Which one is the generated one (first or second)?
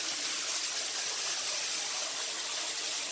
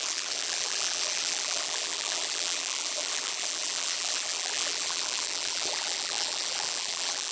second